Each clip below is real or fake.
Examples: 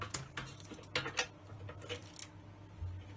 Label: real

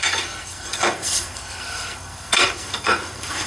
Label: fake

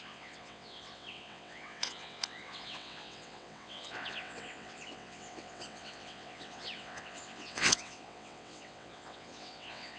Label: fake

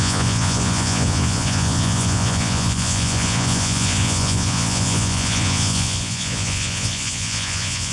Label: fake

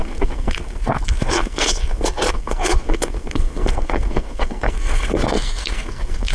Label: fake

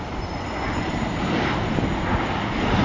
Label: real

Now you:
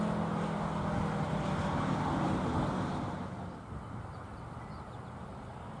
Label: real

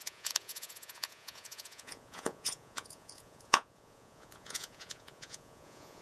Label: fake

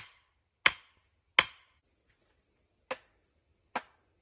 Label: real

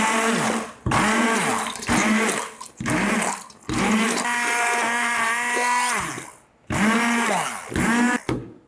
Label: real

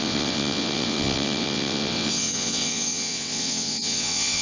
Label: fake